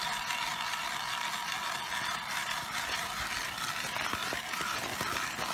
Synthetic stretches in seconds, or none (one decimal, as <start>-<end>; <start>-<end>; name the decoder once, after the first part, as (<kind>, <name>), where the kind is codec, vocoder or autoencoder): 2.4-3.1 (vocoder, BigVGAN v2); 4.2-4.8